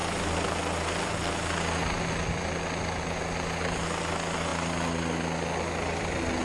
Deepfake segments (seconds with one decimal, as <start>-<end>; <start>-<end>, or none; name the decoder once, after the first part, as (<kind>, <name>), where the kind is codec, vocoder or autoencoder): none